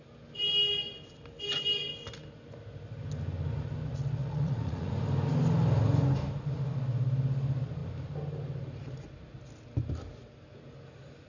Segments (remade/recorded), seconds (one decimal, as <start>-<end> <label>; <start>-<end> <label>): 0.0-4.2 recorded; 4.2-4.9 remade; 4.9-11.3 recorded